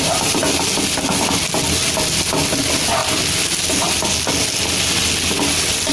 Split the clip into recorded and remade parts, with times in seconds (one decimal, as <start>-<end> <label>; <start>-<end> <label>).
0.0-5.9 recorded